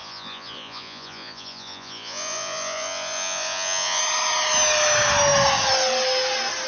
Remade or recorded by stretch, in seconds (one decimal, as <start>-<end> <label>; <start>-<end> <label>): 0.0-4.0 remade; 4.0-6.7 recorded